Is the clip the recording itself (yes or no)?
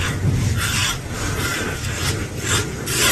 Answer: no